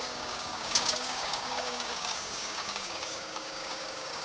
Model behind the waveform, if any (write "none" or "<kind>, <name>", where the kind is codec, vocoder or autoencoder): codec, DAC